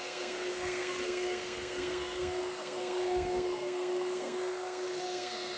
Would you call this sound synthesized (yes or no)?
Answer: yes